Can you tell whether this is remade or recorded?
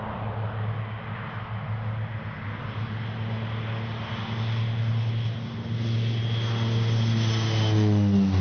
recorded